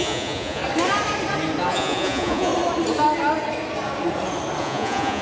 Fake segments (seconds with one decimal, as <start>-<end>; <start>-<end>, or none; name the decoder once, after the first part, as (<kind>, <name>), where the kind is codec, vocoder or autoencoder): 0.0-0.6 (vocoder, Vocos); 1.7-2.5; 4.6-5.2